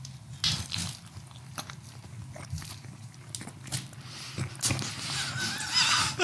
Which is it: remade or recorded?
recorded